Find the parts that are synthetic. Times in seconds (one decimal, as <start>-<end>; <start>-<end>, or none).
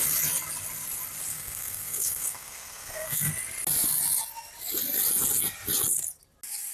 1.3-3.3